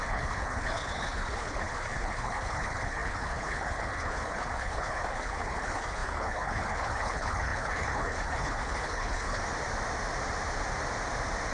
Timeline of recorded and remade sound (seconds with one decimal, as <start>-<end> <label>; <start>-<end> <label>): 0.0-9.4 remade; 9.4-11.5 recorded